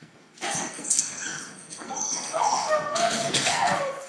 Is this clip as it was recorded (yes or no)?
no